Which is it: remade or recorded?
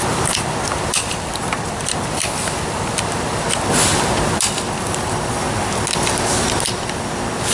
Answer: recorded